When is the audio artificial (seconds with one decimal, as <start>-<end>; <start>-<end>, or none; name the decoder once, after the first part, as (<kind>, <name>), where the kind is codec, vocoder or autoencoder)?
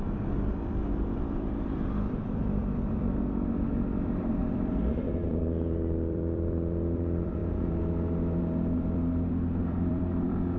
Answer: 0.0-2.6 (vocoder, BigVGAN v2); 4.2-7.4; 8.4-10.6